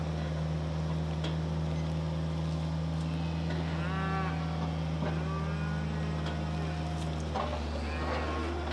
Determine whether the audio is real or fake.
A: real